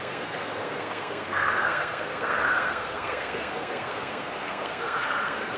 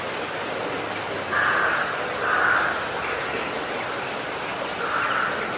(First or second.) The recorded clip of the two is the second